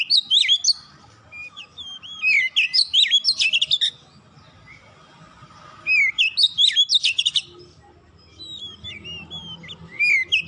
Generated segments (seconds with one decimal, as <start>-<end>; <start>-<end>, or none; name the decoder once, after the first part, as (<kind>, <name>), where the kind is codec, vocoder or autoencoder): 1.4-2.2 (vocoder, BigVGAN v2)